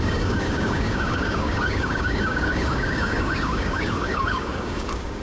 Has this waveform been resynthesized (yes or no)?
yes